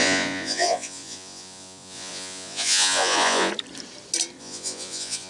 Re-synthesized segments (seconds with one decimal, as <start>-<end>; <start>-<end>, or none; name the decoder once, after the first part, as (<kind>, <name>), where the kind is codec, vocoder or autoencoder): 0.0-3.5 (vocoder, Vocos); 4.4-5.3